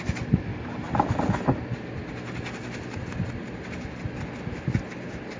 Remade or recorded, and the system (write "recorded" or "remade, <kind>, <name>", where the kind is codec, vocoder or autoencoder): recorded